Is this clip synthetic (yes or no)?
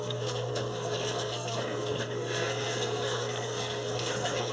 yes